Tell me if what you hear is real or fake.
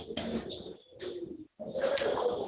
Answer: real